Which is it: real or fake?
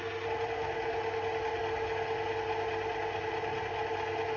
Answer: real